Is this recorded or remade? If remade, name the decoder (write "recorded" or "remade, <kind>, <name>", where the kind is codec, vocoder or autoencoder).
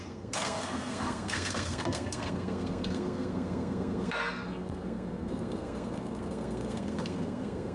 remade, codec, SNAC